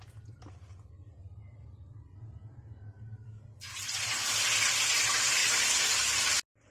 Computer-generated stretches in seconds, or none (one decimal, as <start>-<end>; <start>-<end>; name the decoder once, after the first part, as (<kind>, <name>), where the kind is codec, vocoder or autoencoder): none